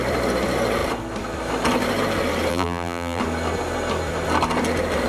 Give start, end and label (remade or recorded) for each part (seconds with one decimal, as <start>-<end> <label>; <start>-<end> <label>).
0.0-2.5 recorded; 2.5-3.2 remade; 3.2-5.1 recorded